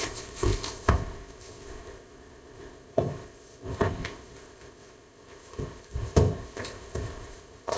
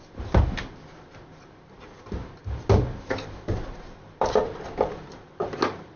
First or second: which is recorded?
second